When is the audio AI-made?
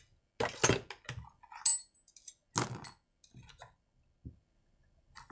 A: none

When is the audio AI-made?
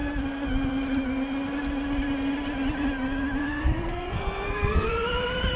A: 3.4-4.9 (codec, SNAC)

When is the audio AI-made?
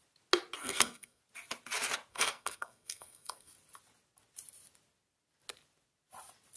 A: 0.6-1.2 (codec, SNAC); 2.1-3.5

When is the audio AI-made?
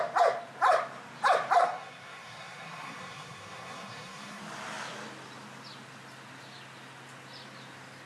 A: 1.6-4.4 (codec, SNAC)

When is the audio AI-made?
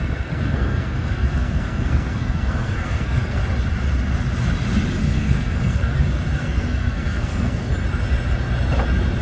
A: 0.0-3.4 (codec, SNAC); 5.0-5.9; 6.4-7.7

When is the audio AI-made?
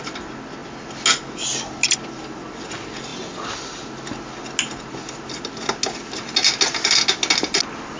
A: none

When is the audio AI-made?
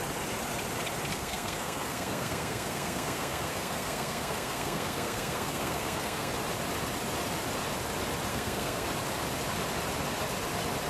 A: 1.1-6.3 (codec, SNAC); 8.3-8.9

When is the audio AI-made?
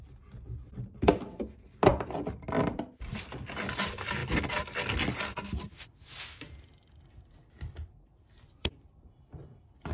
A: none